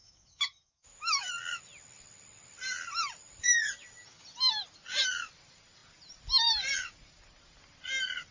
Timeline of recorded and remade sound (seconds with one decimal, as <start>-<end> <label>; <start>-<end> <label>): 0.0-1.3 remade; 1.3-8.3 recorded